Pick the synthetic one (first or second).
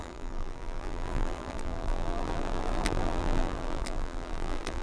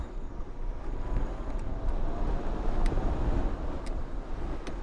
first